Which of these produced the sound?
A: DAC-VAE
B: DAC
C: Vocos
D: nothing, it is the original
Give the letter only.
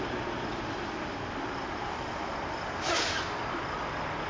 D